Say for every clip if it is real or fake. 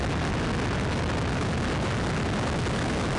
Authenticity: real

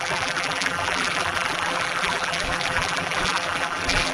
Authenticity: fake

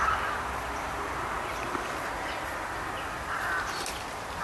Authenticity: fake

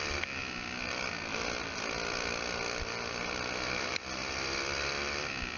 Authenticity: real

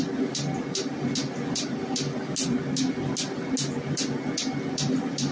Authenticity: real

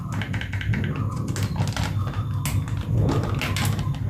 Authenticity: real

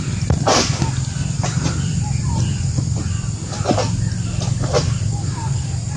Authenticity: real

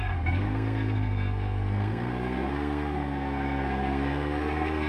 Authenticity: fake